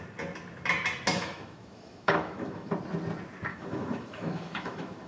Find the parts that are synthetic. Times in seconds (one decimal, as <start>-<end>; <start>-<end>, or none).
1.1-2.7; 3.5-5.1

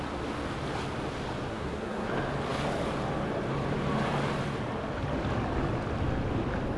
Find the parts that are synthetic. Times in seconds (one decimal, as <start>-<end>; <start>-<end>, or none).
1.5-2.1

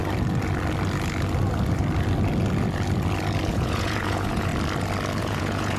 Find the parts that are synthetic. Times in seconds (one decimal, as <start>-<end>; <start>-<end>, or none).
3.5-4.5; 5.2-5.8

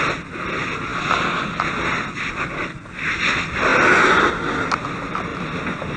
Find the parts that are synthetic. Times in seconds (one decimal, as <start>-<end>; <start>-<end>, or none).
none

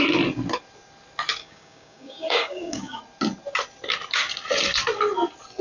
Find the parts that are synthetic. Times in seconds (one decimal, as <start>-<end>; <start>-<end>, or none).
1.4-3.0

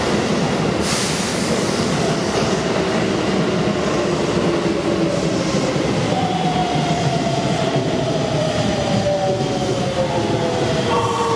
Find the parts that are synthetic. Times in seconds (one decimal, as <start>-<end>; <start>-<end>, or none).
1.3-2.6